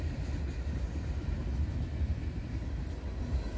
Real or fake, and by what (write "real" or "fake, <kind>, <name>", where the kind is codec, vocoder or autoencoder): real